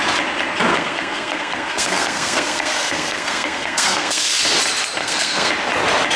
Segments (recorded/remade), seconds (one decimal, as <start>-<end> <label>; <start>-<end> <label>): 0.0-0.7 recorded; 0.7-4.4 remade; 4.4-5.0 recorded; 5.0-5.5 remade; 5.5-6.2 recorded